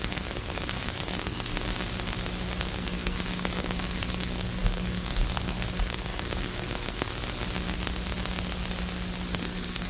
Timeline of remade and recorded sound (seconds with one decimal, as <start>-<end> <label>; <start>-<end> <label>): 0.0-1.5 remade; 1.5-2.6 recorded; 2.6-7.1 remade; 7.1-9.4 recorded; 9.4-9.9 remade

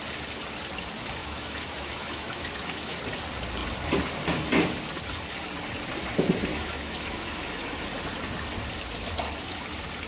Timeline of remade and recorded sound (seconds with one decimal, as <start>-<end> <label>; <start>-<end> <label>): 0.0-1.2 recorded; 1.2-3.0 remade; 3.0-6.5 recorded; 6.5-7.8 remade; 7.8-10.1 recorded

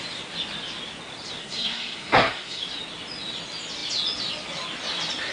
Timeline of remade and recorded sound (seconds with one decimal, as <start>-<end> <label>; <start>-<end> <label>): 0.0-1.4 recorded; 1.4-2.6 remade; 2.6-5.3 recorded

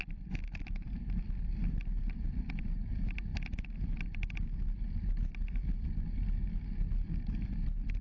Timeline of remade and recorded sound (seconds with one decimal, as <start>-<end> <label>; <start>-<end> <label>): 0.0-3.3 remade; 3.3-7.2 recorded; 7.2-8.0 remade

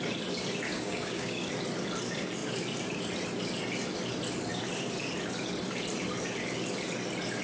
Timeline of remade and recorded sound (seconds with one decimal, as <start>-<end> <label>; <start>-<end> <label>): 0.0-0.7 recorded; 0.7-1.5 remade; 1.5-7.4 recorded

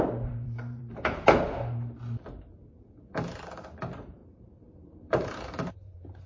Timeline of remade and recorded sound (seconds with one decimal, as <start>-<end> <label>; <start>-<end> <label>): 0.0-6.3 remade

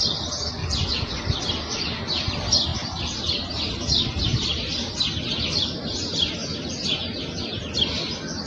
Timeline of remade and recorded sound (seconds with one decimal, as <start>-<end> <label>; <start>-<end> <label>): 0.0-0.6 recorded; 0.6-1.1 remade; 1.1-6.4 recorded; 6.4-7.7 remade; 7.7-8.5 recorded

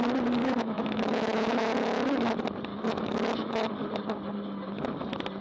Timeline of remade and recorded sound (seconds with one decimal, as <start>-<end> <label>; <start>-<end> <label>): 0.0-0.4 recorded; 0.4-2.3 remade; 2.3-2.7 recorded; 2.7-3.7 remade; 3.7-5.4 recorded